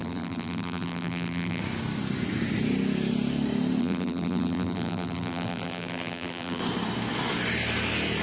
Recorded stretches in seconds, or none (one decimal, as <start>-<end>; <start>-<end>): 1.6-3.8; 6.6-8.2